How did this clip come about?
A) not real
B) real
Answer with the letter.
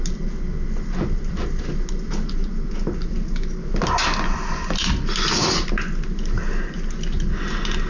B